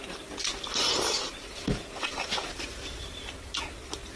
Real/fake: real